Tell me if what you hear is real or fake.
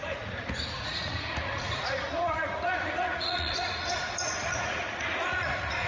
fake